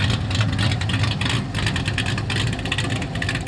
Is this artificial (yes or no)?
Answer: no